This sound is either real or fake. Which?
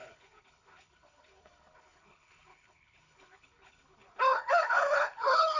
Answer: fake